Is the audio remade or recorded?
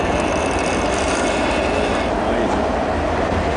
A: recorded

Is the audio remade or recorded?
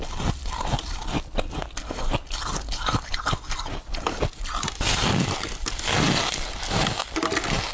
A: recorded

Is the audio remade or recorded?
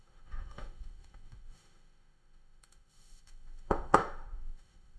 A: remade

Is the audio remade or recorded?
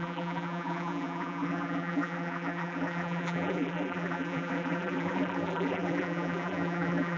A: remade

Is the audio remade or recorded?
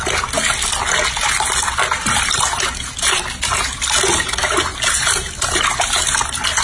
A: recorded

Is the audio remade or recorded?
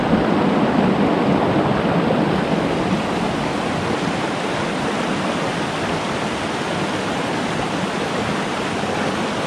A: recorded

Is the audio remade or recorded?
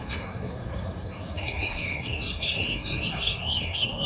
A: remade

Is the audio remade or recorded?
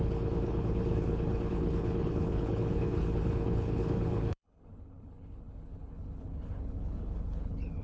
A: remade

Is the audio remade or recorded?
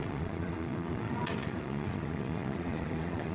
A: remade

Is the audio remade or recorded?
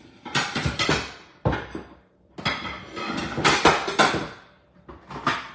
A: recorded